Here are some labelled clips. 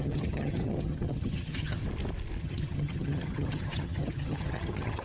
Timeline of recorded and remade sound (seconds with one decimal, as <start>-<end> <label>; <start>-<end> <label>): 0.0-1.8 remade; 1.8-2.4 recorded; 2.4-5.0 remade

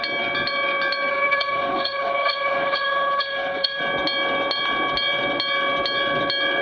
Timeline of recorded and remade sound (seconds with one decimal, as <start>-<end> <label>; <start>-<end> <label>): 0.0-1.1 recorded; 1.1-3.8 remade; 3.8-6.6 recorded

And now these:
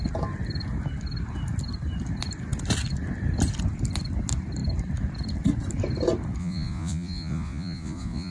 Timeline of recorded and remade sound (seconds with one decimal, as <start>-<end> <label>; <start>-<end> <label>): 0.0-6.4 recorded; 6.4-8.3 remade